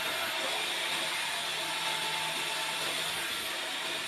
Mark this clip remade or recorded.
recorded